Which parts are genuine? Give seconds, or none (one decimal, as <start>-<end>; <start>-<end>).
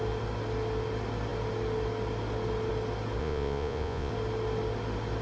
0.0-3.2; 4.1-5.2